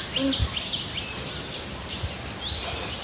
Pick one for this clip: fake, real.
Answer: real